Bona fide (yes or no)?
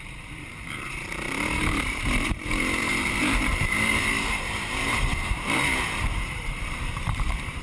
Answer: no